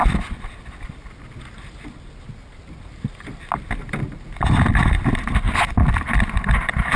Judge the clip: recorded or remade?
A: recorded